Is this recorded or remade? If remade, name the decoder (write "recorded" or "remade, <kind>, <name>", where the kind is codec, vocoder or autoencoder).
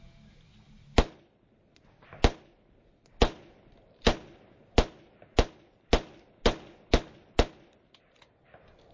recorded